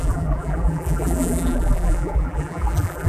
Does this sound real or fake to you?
fake